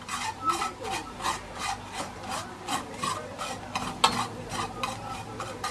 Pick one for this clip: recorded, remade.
recorded